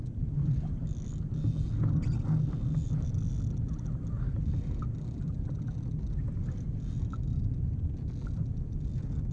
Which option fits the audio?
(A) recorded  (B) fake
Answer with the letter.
A